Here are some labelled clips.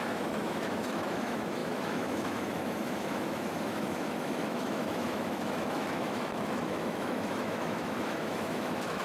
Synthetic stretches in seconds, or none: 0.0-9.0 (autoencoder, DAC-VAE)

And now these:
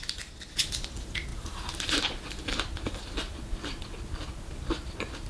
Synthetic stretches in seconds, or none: none

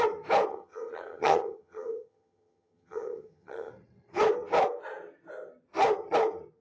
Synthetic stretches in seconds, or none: 0.5-3.7 (vocoder, HiFi-GAN)

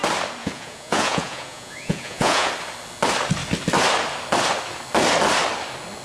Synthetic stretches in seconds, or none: 0.4-2.5 (vocoder, Vocos)

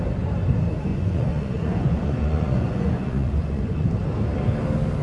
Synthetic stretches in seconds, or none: 0.9-3.9 (vocoder, Vocos)

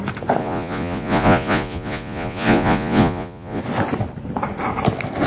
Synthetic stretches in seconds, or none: 0.4-3.6 (vocoder, Vocos)